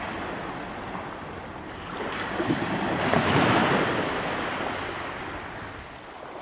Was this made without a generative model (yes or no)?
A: yes